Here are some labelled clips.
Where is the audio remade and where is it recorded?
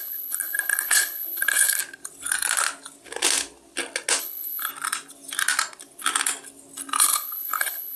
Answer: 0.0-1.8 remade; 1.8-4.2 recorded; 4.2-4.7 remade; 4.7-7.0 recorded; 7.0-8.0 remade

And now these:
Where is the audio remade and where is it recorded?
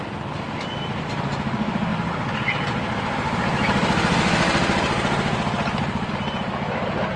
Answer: 0.0-7.2 recorded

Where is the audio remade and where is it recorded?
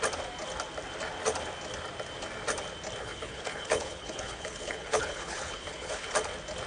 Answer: 0.0-3.0 recorded; 3.0-6.1 remade; 6.1-6.7 recorded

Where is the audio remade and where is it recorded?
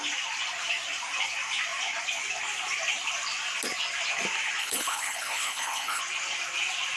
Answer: 0.0-4.6 recorded; 4.6-6.0 remade; 6.0-7.0 recorded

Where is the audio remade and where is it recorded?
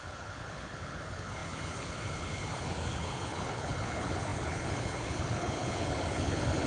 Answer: 0.0-6.7 remade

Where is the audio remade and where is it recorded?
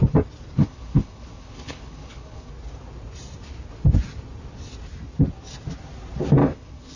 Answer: 0.0-0.6 recorded; 0.6-2.5 remade; 2.5-6.4 recorded; 6.4-7.0 remade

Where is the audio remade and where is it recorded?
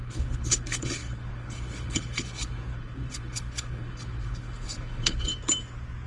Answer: 0.0-5.3 remade; 5.3-6.1 recorded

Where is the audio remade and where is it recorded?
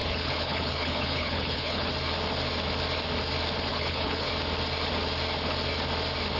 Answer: 0.0-1.9 remade; 1.9-3.7 recorded; 3.7-4.3 remade; 4.3-6.4 recorded